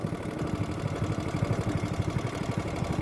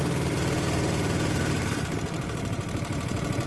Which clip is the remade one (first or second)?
second